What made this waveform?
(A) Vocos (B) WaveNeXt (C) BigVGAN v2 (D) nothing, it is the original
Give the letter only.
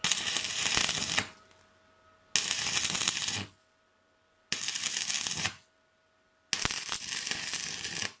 D